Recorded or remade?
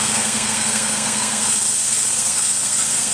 remade